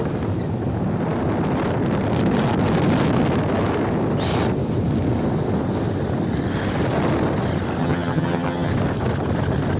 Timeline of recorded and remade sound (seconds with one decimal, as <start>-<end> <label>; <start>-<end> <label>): 0.0-7.8 recorded; 7.8-8.7 remade; 8.7-9.8 recorded